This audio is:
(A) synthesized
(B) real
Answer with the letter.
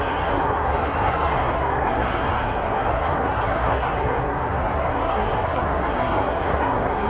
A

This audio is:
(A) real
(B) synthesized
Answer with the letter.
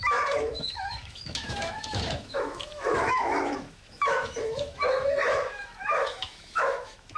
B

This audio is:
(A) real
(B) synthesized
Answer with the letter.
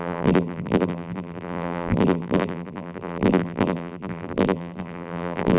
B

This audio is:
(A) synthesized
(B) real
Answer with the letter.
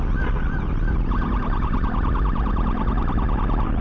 B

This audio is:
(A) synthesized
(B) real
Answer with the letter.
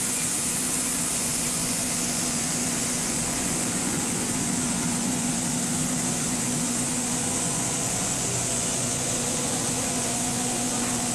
A